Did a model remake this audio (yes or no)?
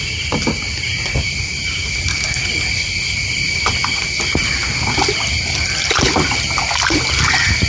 no